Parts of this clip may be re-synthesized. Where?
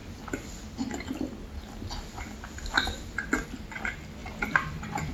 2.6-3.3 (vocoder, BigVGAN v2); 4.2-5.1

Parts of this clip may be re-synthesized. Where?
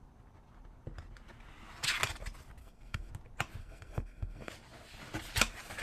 2.6-3.1 (codec, SNAC); 3.6-4.5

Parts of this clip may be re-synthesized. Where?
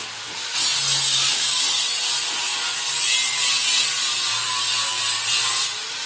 1.1-1.6 (codec, DAC)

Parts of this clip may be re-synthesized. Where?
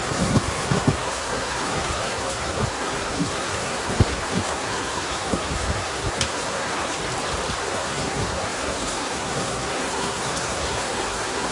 0.0-7.0 (codec, SNAC); 7.6-11.5